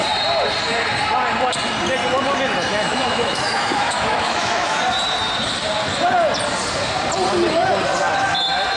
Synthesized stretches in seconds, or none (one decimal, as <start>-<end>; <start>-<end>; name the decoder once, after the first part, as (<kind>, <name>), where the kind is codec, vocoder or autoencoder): 2.7-4.8 (autoencoder, DAC-VAE)